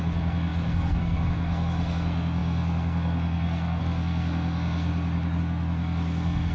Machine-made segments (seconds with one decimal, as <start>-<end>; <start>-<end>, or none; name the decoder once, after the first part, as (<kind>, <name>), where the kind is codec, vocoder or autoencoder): 0.0-4.9 (codec, SNAC); 5.4-6.5